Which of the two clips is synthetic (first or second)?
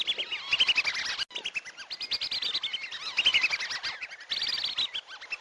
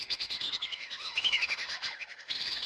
second